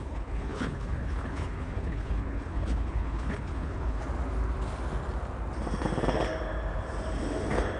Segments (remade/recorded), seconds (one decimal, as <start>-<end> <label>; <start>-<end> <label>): 0.0-4.0 remade; 4.0-7.8 recorded